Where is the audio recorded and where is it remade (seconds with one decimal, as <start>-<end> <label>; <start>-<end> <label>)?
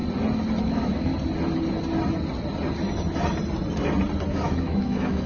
0.0-0.6 recorded; 0.6-1.1 remade; 1.1-4.3 recorded; 4.3-5.3 remade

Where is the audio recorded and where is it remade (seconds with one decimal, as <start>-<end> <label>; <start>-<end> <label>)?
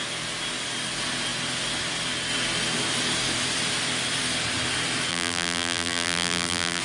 0.0-5.1 recorded; 5.1-6.8 remade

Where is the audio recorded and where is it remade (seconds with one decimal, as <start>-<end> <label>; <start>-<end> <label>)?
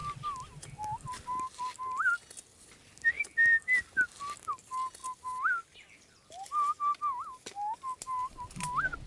0.0-9.1 recorded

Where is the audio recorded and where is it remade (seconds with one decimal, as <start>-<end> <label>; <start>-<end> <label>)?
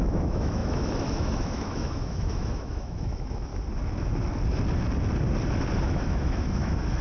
0.0-3.5 remade; 3.5-5.8 recorded; 5.8-7.0 remade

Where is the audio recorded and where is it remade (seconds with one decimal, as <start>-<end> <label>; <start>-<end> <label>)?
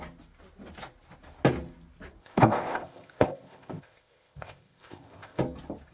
0.0-2.2 recorded; 2.2-5.4 remade; 5.4-5.9 recorded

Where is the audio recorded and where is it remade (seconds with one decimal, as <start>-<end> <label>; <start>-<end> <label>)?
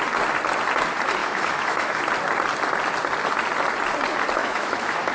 0.0-1.2 recorded; 1.2-2.0 remade; 2.0-4.4 recorded; 4.4-5.1 remade